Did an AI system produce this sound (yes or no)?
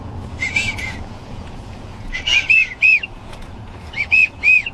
yes